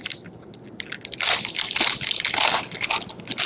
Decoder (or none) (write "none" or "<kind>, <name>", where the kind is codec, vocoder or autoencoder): none